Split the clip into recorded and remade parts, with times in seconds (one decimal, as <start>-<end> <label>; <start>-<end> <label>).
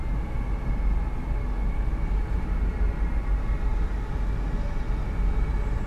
0.0-5.9 recorded